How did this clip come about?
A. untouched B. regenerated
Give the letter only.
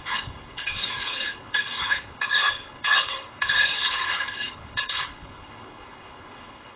B